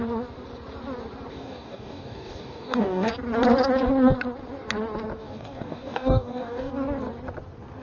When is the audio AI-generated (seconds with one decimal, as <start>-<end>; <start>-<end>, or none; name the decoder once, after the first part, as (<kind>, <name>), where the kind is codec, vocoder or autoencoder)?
1.3-3.1 (codec, DAC); 5.2-6.7